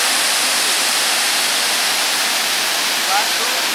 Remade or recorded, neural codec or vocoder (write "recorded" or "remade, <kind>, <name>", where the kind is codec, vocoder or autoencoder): recorded